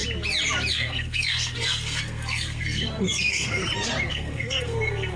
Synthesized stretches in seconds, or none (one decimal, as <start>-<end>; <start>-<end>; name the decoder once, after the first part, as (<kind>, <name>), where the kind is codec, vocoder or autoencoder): 0.7-3.6 (codec, SNAC); 4.1-5.2